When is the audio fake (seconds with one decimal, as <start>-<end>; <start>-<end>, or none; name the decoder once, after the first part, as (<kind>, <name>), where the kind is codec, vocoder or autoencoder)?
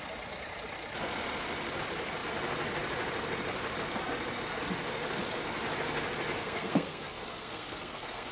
6.4-8.3 (codec, SNAC)